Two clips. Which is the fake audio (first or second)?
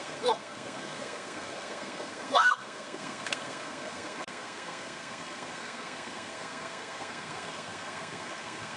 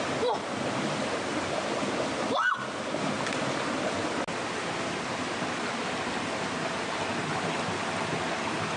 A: first